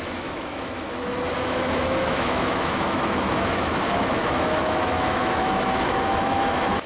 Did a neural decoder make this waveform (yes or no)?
yes